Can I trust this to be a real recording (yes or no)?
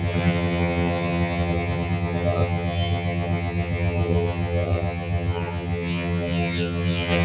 no